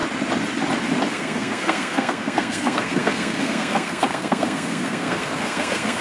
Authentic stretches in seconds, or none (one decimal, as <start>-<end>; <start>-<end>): 0.0-1.1